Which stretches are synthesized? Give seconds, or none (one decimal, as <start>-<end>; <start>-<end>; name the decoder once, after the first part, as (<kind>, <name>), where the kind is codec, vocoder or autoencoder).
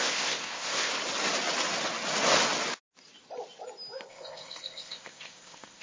0.0-0.9 (codec, ZipCodec); 4.1-5.8